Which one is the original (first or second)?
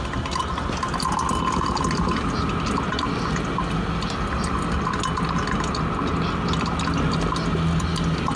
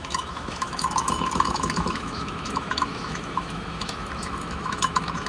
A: first